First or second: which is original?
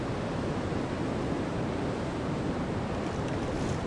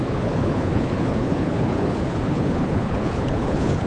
first